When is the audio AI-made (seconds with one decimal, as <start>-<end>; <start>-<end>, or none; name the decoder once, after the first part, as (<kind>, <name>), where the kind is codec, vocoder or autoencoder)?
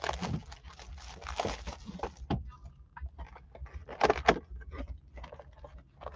none